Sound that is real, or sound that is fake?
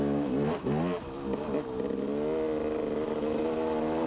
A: real